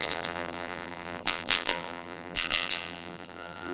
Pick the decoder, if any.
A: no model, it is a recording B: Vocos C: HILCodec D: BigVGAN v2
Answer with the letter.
D